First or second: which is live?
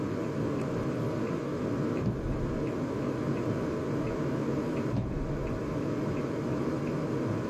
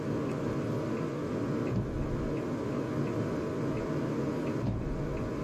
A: second